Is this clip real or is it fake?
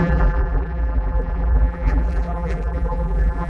fake